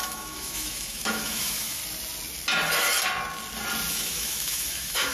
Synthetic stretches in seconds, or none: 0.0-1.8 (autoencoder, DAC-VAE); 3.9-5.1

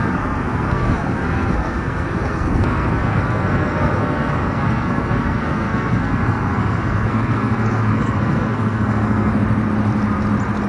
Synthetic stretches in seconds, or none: 0.0-9.3 (codec, SNAC)

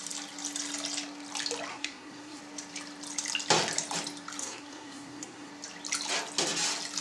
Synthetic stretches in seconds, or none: 1.7-2.4 (codec, SNAC); 4.4-5.5

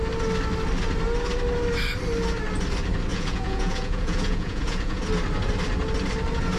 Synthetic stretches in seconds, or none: 3.1-5.0 (vocoder, Vocos)

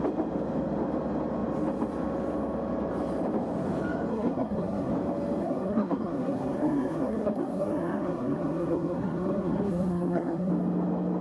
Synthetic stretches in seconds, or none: 4.1-4.9 (codec, SNAC); 5.4-10.5

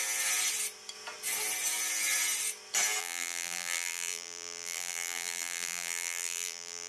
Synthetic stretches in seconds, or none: 3.0-6.9 (vocoder, BigVGAN v2)

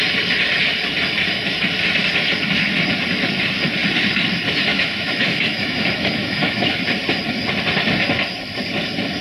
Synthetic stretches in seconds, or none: 4.7-6.8 (autoencoder, DAC-VAE)